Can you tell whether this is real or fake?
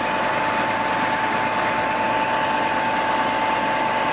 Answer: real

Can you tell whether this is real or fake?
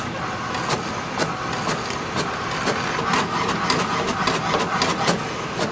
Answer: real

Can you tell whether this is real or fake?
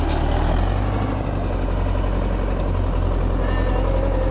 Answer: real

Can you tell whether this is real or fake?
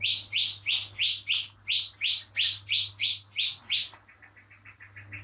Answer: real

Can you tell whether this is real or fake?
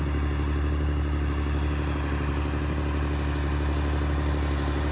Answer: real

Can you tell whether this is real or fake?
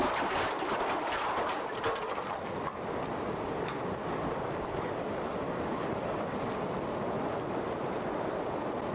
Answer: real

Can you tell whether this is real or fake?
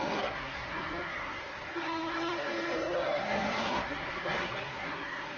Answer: fake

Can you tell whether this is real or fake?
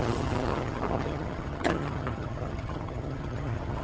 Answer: fake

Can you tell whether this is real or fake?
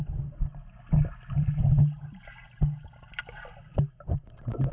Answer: real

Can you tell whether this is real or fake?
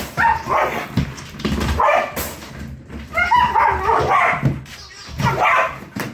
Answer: real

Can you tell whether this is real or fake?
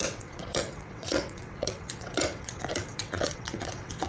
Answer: fake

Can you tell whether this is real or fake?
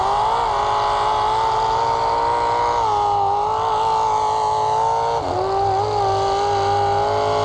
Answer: real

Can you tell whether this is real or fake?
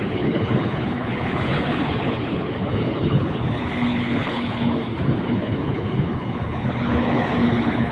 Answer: fake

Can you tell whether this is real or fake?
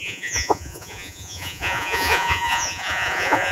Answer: fake